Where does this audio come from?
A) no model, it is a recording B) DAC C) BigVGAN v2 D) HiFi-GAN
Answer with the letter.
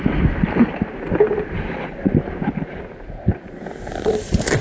C